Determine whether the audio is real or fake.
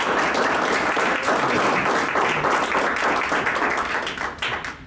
real